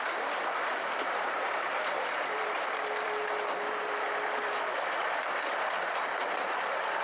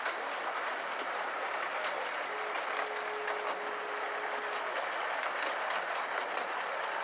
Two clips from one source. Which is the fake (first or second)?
first